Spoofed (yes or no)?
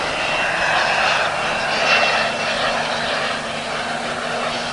no